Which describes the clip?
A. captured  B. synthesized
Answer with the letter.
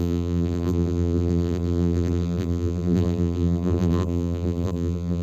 B